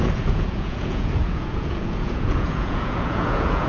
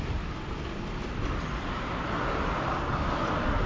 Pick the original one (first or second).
second